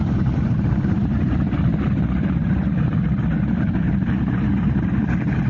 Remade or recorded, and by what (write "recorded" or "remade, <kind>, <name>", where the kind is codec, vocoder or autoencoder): remade, vocoder, BigVGAN v2